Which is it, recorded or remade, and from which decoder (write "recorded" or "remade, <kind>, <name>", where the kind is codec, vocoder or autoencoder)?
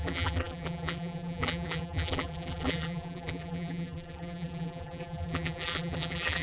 remade, vocoder, BigVGAN v2